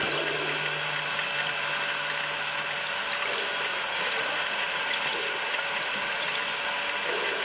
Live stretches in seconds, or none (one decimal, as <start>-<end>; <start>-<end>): 0.0-3.7; 6.3-7.4